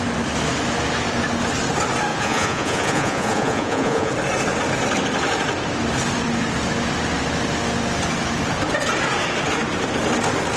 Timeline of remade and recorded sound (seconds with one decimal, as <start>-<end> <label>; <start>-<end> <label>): 0.0-2.1 recorded; 2.1-4.1 remade; 4.1-10.6 recorded